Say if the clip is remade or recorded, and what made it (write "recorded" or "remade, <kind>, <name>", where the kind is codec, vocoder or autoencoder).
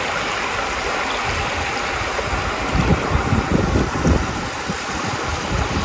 recorded